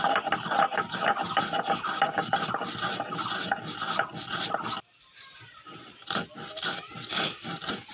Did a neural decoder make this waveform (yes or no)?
no